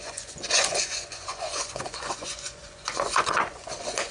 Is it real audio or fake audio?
fake